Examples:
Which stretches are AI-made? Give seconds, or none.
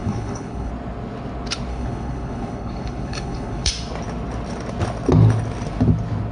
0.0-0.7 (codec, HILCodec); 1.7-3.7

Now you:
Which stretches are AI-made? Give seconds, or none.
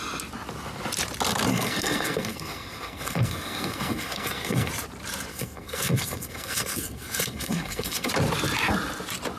1.5-4.7 (codec, SNAC); 5.3-8.1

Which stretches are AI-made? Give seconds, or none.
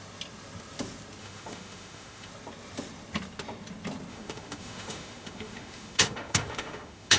1.2-2.3 (autoencoder, DAC-VAE); 4.1-7.2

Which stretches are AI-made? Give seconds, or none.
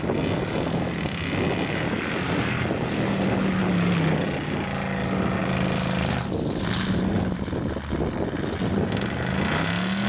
none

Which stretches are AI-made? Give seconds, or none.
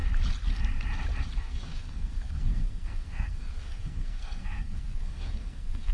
1.4-5.9 (codec, SNAC)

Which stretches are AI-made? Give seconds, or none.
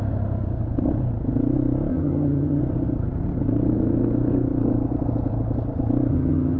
1.9-2.6 (vocoder, HiFi-GAN); 6.1-6.6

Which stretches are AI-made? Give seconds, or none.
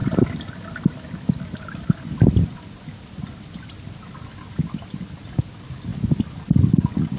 none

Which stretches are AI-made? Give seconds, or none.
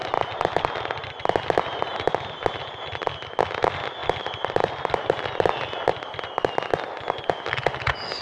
0.0-0.6 (vocoder, BigVGAN v2); 4.0-4.7